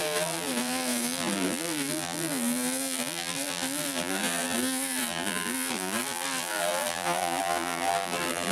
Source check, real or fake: fake